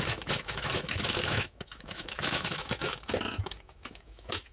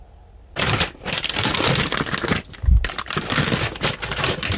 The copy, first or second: first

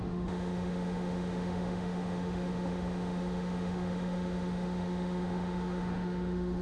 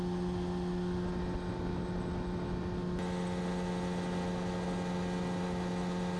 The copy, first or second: first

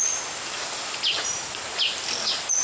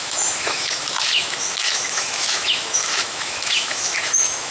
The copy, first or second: second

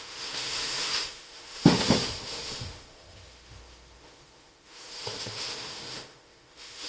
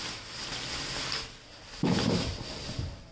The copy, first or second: first